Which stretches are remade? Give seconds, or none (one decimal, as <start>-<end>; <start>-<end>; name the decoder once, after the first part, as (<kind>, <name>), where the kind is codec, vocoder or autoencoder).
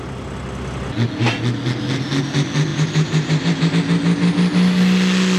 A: 2.7-3.7 (vocoder, BigVGAN v2)